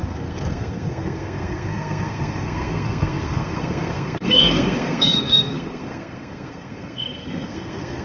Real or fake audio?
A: fake